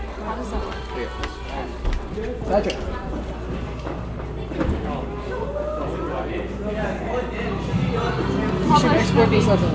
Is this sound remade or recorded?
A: recorded